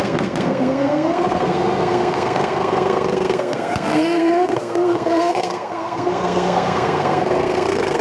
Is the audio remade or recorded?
remade